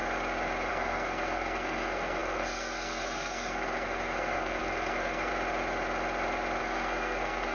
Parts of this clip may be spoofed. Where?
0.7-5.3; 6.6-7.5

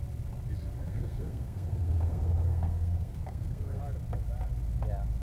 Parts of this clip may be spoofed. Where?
0.8-3.8

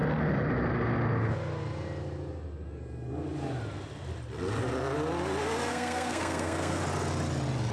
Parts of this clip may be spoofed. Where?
5.7-6.8

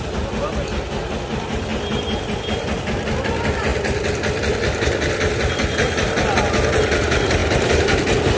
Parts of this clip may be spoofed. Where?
none